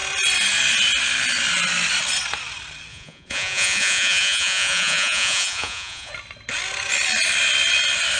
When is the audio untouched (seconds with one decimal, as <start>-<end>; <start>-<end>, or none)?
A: 0.0-2.9; 6.1-8.2

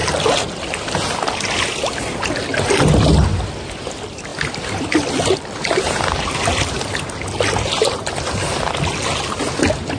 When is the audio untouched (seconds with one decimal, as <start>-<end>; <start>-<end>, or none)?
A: 0.0-10.0